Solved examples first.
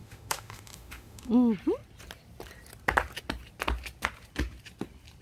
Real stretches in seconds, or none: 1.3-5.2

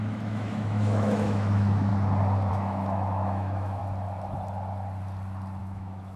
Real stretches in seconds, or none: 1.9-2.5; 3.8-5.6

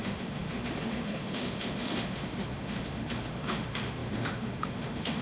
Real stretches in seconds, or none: none

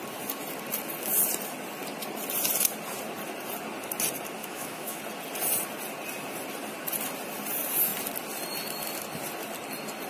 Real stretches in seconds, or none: 0.0-4.4; 5.0-10.1

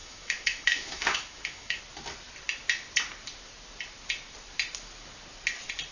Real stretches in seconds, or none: 1.8-5.9

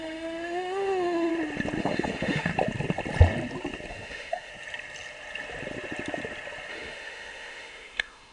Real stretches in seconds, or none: 1.3-1.8; 2.5-3.9; 4.5-6.7